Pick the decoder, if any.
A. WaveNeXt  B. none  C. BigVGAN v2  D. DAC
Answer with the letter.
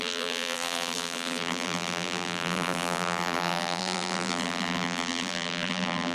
C